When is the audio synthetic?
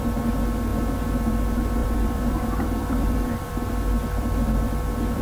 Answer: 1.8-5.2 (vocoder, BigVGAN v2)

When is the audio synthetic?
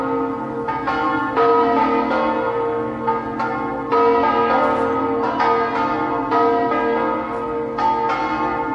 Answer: none